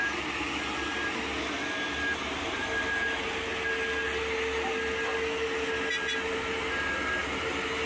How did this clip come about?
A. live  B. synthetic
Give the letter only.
A